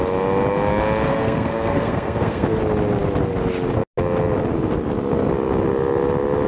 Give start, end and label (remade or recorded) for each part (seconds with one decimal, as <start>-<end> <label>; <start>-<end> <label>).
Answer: 0.0-1.1 recorded; 1.1-2.6 remade; 2.6-6.5 recorded